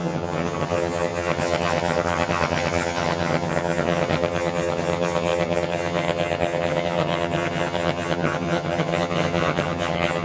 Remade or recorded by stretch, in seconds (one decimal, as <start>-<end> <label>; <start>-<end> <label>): 0.0-10.2 remade

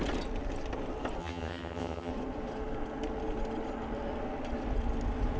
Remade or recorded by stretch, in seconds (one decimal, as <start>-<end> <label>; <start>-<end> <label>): 0.0-1.2 recorded; 1.2-2.1 remade; 2.1-5.4 recorded

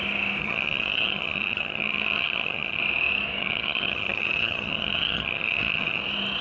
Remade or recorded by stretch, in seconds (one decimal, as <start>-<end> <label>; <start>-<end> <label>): 0.0-0.4 recorded; 0.4-2.8 remade; 2.8-3.4 recorded; 3.4-6.0 remade; 6.0-6.4 recorded

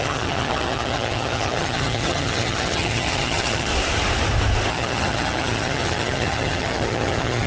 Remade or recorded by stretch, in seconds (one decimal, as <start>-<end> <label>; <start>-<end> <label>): 0.0-3.7 remade; 3.7-4.7 recorded; 4.7-7.5 remade

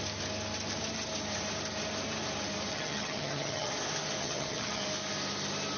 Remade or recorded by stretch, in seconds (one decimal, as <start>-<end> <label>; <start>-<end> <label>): 0.0-2.7 recorded; 2.7-3.7 remade; 3.7-4.2 recorded; 4.2-4.8 remade; 4.8-5.8 recorded

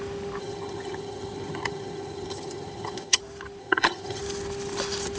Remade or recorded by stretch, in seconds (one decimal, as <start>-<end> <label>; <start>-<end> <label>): 0.0-0.4 recorded; 0.4-3.2 remade; 3.2-3.6 recorded; 3.6-4.2 remade; 4.2-5.2 recorded